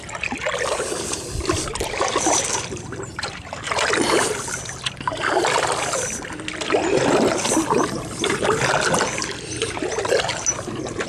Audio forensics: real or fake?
real